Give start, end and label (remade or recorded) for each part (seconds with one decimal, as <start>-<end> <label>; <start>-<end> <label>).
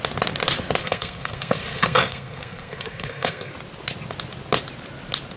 0.0-0.8 recorded; 0.8-3.5 remade; 3.5-5.4 recorded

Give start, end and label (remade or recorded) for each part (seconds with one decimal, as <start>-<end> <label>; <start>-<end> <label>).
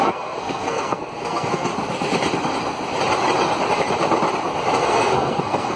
0.0-1.7 remade; 1.7-4.8 recorded; 4.8-5.8 remade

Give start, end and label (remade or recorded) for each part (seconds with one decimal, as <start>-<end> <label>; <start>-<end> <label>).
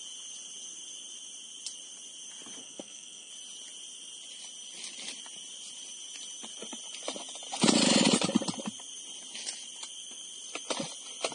0.0-2.6 recorded; 2.6-3.3 remade; 3.3-11.3 recorded